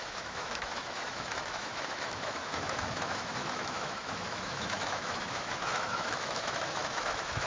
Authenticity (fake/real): fake